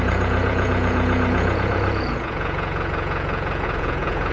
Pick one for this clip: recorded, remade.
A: remade